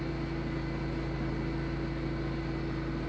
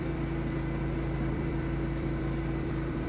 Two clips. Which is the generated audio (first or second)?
second